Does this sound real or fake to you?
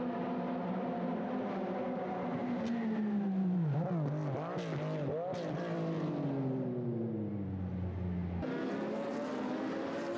real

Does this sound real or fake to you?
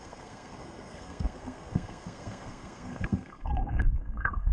fake